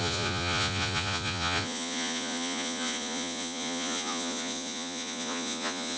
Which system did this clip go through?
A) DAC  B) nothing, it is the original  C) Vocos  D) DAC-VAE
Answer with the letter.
C